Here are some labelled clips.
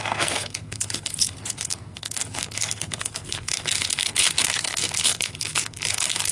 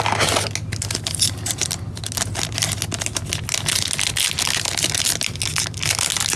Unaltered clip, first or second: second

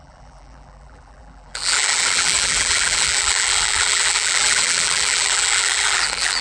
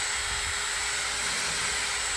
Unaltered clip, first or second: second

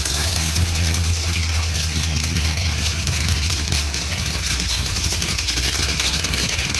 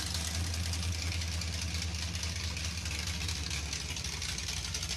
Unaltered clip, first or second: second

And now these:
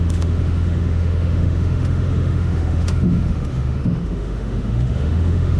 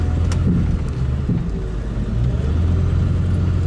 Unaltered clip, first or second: second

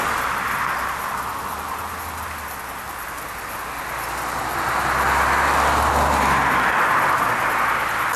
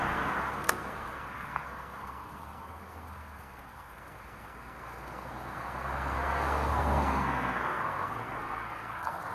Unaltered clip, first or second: first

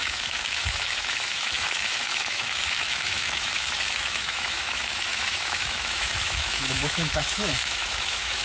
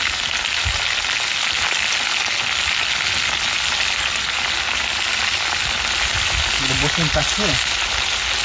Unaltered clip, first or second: second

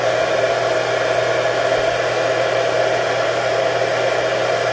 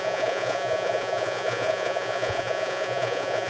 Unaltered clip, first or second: first